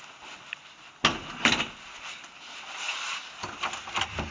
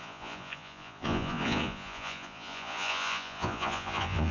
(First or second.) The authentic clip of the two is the first